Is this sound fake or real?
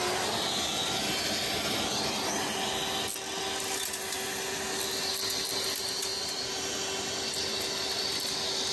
real